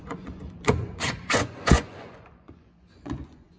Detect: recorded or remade remade